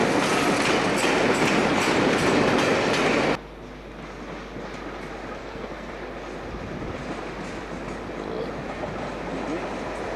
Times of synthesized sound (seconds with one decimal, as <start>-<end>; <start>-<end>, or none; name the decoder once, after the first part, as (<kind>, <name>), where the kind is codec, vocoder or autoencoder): 5.4-5.9 (codec, SNAC)